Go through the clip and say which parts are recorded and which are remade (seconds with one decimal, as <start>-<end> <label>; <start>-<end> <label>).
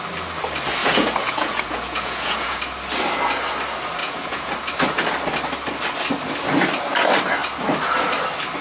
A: 0.0-0.8 recorded; 0.8-2.6 remade; 2.6-4.0 recorded; 4.0-4.5 remade; 4.5-8.6 recorded